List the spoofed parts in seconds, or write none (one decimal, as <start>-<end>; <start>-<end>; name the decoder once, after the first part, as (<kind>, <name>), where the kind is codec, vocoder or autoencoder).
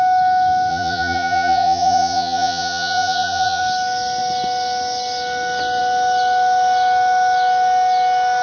0.7-3.6 (vocoder, Vocos)